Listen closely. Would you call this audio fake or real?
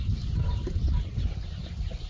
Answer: fake